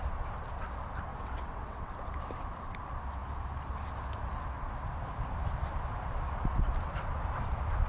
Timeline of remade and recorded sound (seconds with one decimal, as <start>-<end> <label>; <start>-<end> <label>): 0.0-1.1 recorded; 1.1-1.9 remade; 1.9-7.9 recorded